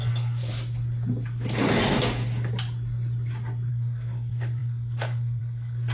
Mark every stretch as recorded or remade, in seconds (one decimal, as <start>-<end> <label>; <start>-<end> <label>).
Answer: 0.0-0.5 remade; 0.5-3.7 recorded; 3.7-5.9 remade